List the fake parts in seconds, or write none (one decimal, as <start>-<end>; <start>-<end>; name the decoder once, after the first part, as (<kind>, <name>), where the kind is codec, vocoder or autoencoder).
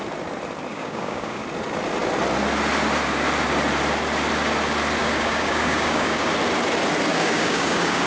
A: 0.7-1.4 (codec, DAC); 5.0-6.3; 7.1-8.1